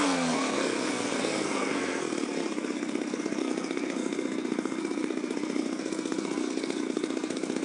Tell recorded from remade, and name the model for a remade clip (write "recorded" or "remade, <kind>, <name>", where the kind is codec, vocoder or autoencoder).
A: remade, codec, SNAC